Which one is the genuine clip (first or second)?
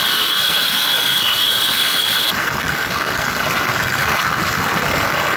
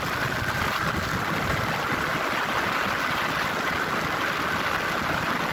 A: second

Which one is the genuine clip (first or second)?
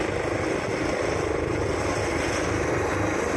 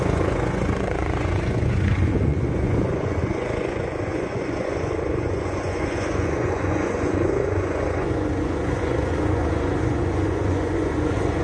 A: first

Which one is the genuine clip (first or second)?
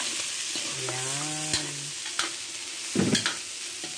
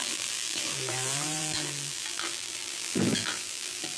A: first